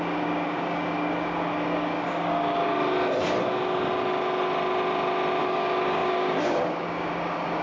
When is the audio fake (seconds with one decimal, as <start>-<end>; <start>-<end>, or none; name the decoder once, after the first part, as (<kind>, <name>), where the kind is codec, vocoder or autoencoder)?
0.0-2.7 (codec, DAC); 5.4-7.6